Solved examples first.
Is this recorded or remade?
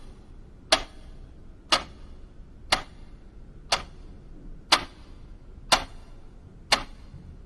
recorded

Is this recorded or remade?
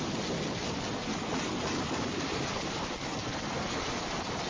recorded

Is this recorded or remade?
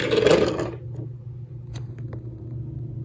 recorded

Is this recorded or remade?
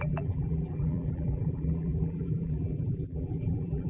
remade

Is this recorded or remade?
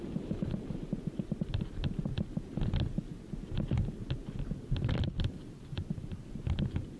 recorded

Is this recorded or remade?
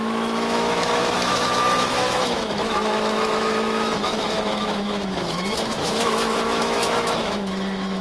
remade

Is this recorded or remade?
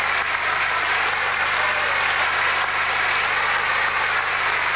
recorded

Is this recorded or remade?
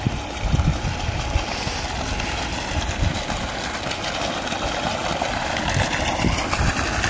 recorded